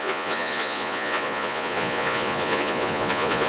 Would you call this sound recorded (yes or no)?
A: no